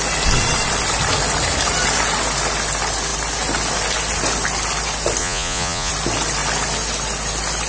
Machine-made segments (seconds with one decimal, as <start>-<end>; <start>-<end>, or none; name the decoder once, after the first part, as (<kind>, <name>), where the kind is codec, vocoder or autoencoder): 5.2-5.9 (vocoder, Vocos)